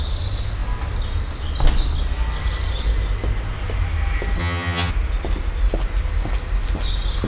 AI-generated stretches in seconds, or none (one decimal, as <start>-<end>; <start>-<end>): 4.4-4.9